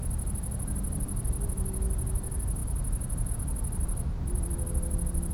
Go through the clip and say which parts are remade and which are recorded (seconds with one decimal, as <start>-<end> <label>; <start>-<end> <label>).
0.0-5.3 recorded